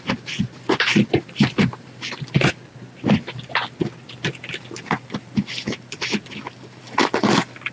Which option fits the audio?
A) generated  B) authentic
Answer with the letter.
B